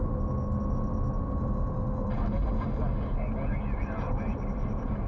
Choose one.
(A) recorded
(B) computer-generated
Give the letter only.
A